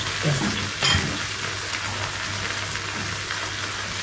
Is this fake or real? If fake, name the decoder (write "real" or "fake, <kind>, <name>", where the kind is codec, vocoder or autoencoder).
real